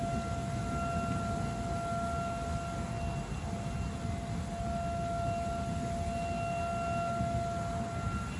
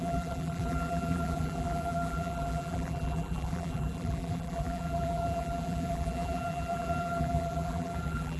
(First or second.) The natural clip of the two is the first